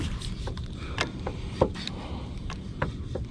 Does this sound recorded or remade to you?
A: recorded